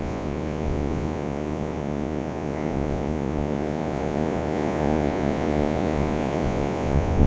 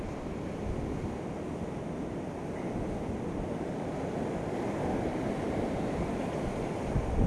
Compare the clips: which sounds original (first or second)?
second